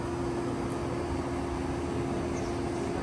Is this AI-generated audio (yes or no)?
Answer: no